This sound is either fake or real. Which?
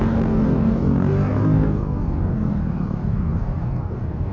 fake